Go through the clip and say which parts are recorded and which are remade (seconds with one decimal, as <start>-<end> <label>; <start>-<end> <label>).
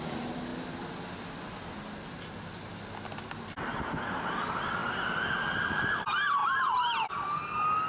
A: 0.0-4.8 recorded; 4.8-6.0 remade; 6.0-7.9 recorded